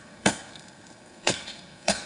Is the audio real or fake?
fake